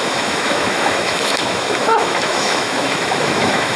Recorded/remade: remade